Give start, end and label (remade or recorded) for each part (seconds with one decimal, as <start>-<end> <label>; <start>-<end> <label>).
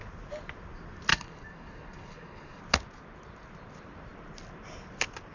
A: 0.0-1.1 recorded; 1.1-2.6 remade; 2.6-5.3 recorded